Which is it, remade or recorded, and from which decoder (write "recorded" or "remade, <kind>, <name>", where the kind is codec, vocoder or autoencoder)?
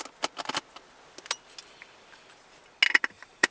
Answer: recorded